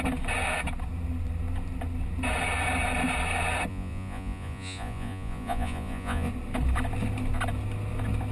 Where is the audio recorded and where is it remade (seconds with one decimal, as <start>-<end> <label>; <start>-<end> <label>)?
0.0-3.7 recorded; 3.7-6.3 remade; 6.3-8.3 recorded